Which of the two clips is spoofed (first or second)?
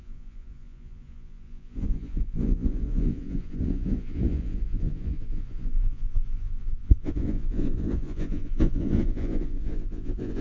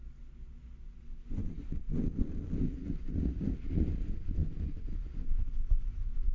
first